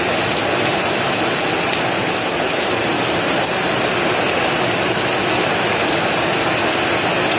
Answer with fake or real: real